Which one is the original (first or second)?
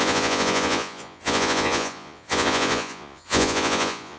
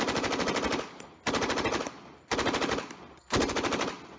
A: second